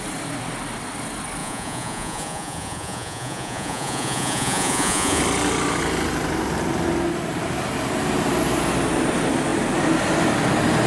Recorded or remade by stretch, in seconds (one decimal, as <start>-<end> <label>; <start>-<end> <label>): 0.0-1.4 recorded; 1.4-5.2 remade; 5.2-10.9 recorded